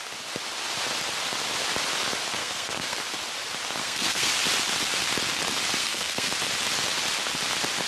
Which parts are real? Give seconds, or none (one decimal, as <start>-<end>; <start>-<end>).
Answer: 0.0-2.4; 3.0-3.8; 4.3-5.8; 6.3-7.9